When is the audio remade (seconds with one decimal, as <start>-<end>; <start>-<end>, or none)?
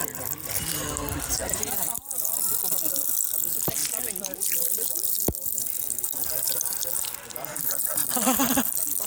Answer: 0.0-8.0